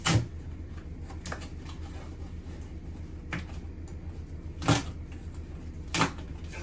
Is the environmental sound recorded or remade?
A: recorded